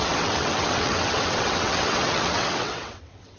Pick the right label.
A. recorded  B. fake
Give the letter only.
B